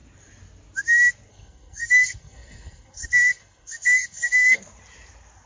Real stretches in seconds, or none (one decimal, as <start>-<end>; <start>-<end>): 0.0-1.3; 4.6-5.5